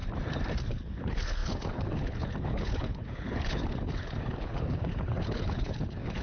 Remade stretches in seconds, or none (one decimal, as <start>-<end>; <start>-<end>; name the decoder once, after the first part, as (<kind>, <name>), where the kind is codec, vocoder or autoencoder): 0.7-6.2 (codec, HILCodec)